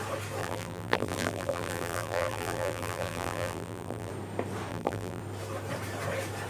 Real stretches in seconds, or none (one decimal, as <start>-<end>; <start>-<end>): 0.0-0.4; 4.1-4.7; 5.2-6.5